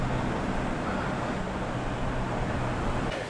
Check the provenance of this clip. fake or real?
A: real